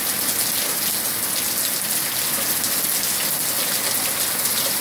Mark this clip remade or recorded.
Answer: recorded